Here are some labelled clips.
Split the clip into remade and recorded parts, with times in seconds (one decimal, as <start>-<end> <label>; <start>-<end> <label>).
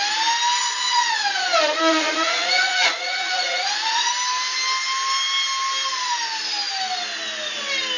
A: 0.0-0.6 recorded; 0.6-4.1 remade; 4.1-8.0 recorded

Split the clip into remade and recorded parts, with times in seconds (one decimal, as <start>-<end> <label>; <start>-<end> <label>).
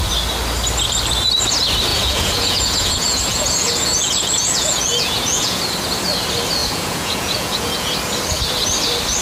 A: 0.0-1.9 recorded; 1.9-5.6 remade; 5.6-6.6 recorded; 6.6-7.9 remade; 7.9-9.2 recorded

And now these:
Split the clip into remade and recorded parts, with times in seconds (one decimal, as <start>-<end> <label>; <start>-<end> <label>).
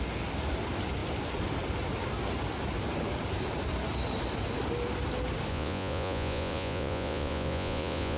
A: 0.0-5.5 recorded; 5.5-8.2 remade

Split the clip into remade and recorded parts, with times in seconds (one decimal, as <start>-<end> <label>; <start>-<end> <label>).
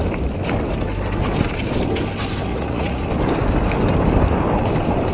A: 0.0-2.5 recorded; 2.5-3.0 remade; 3.0-5.1 recorded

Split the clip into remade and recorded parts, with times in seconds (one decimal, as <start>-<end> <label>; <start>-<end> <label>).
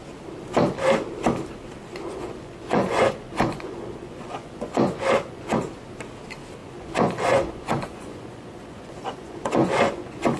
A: 0.0-1.8 recorded; 1.8-5.6 remade; 5.6-6.6 recorded; 6.6-10.4 remade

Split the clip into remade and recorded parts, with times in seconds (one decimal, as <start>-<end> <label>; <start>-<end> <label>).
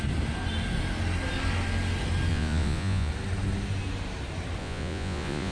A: 0.0-2.3 recorded; 2.3-3.1 remade; 3.1-4.6 recorded; 4.6-5.5 remade